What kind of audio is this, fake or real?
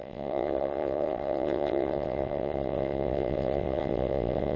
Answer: fake